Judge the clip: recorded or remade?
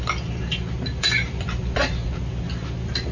recorded